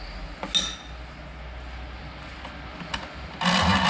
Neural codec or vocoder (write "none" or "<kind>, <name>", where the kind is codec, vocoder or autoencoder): none